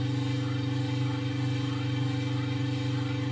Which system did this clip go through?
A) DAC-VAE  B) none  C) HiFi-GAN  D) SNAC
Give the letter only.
B